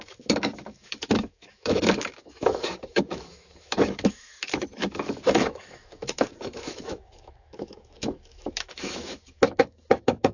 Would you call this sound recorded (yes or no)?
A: no